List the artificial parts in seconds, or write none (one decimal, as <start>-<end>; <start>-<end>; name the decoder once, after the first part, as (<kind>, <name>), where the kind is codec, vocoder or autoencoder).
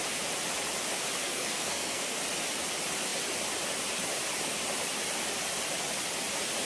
1.2-2.2 (codec, SNAC)